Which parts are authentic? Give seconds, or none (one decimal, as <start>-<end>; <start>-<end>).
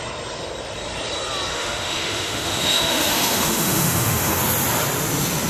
0.0-1.5; 4.4-5.5